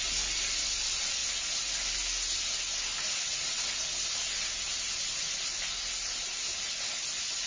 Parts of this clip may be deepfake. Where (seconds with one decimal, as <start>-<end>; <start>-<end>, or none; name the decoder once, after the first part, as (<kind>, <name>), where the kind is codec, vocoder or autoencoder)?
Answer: none